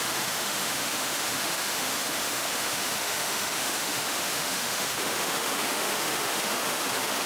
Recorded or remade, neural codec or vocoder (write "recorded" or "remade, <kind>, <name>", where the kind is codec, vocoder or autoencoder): remade, autoencoder, DAC-VAE